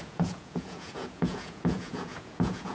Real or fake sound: fake